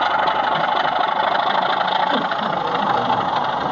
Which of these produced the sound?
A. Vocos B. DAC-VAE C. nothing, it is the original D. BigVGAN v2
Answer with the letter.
C